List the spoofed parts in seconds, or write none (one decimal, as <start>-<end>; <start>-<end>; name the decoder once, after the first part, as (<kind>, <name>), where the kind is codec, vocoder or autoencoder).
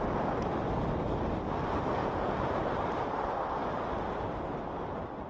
2.0-2.6 (vocoder, Vocos)